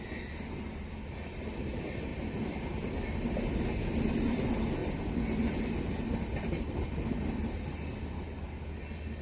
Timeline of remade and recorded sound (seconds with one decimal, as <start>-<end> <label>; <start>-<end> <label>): 0.0-9.2 recorded